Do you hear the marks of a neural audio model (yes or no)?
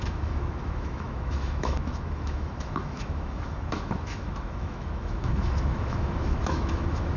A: yes